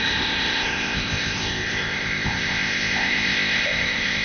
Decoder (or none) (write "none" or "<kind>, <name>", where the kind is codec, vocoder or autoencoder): codec, ZipCodec